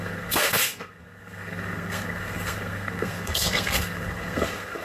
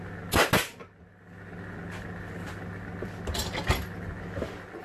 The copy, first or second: first